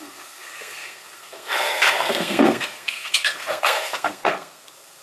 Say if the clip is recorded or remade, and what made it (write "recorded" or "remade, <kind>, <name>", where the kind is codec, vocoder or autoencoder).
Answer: remade, codec, SNAC